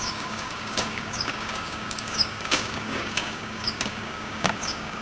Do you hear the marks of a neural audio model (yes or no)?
yes